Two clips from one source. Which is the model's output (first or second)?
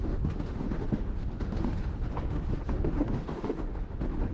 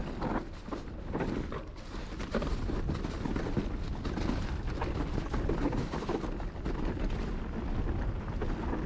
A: first